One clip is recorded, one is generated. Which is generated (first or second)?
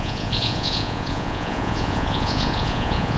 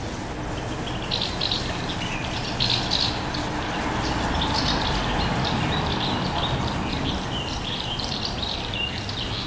first